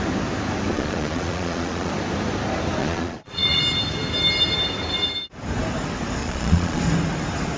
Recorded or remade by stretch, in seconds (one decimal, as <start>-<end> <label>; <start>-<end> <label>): 0.0-0.7 recorded; 0.7-1.9 remade; 1.9-2.8 recorded; 2.8-3.6 remade; 3.6-6.2 recorded; 6.2-6.8 remade; 6.8-7.6 recorded